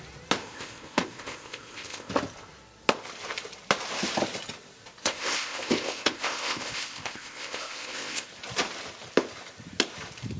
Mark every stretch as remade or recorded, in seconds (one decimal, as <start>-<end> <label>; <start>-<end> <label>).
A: 0.0-0.4 recorded; 0.4-2.1 remade; 2.1-5.0 recorded; 5.0-8.3 remade; 8.3-10.4 recorded